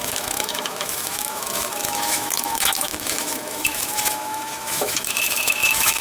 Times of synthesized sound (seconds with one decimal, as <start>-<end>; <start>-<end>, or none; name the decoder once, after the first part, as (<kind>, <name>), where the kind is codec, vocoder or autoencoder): 0.0-6.0 (autoencoder, DAC-VAE)